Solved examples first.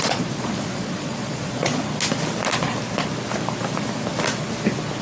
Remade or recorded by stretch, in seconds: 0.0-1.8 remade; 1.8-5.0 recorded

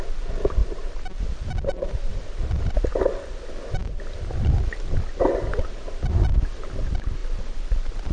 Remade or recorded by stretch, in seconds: 0.0-0.6 remade; 0.6-1.2 recorded; 1.2-2.1 remade; 2.1-6.6 recorded; 6.6-8.1 remade